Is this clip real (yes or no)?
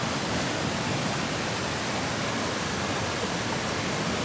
yes